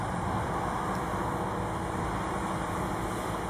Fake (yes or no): no